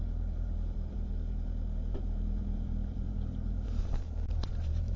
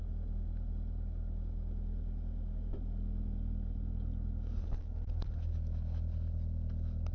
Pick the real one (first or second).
second